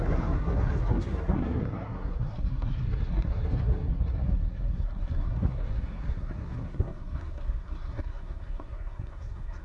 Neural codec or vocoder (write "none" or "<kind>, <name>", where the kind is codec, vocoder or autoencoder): codec, SNAC